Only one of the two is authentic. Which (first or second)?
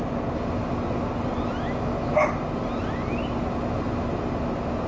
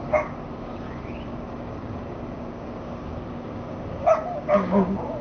first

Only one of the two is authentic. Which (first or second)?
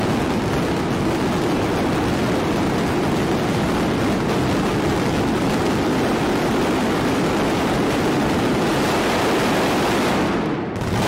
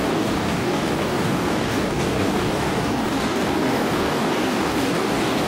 first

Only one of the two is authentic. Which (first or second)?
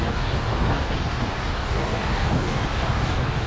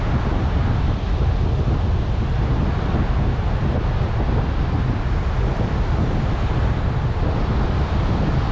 second